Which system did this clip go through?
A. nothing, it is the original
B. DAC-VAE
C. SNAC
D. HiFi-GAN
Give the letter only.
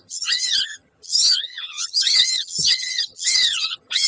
D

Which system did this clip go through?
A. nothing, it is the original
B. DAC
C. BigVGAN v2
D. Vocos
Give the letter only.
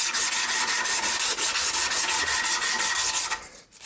A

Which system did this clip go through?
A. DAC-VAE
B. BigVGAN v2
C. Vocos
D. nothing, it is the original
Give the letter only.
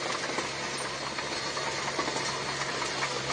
D